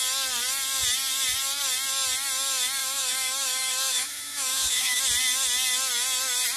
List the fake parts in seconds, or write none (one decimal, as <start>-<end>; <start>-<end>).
2.8-5.0